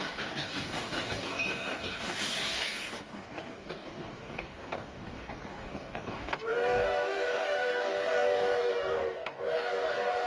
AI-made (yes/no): yes